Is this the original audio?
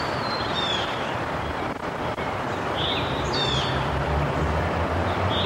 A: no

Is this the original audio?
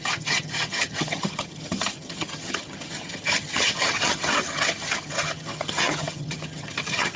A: no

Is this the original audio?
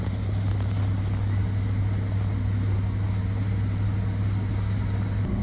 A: yes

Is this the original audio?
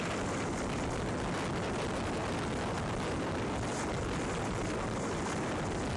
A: yes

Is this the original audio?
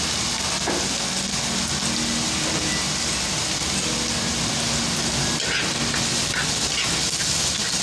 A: yes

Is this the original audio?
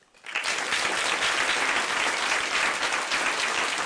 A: yes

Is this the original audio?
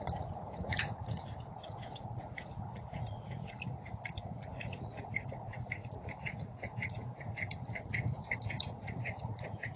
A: no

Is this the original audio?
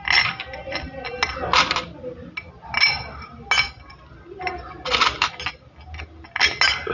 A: yes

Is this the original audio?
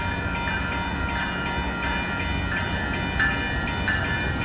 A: yes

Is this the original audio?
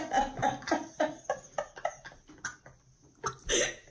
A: yes